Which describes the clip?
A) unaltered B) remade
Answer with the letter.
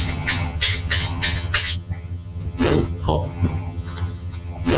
B